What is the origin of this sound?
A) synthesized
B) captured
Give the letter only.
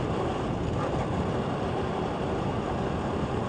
B